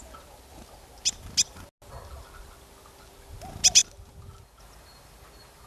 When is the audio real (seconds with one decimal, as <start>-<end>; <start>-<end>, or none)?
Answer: 0.0-5.7